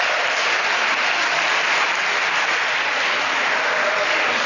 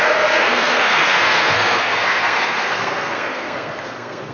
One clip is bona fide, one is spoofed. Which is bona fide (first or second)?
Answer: first